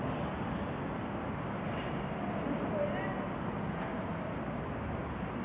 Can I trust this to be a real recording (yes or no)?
yes